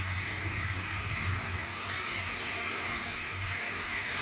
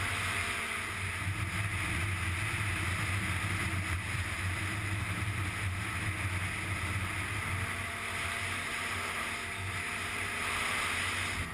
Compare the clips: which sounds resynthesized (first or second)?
first